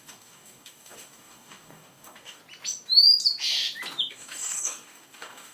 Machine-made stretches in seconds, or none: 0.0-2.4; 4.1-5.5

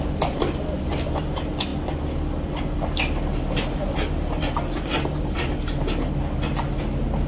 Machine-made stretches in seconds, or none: none

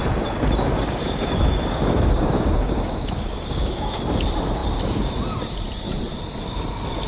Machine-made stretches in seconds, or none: 0.7-4.0